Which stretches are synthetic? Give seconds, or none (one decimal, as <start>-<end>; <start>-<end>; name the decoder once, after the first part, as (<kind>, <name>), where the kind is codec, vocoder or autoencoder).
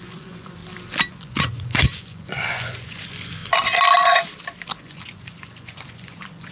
0.0-0.6 (vocoder, Vocos); 1.1-3.4; 4.8-6.5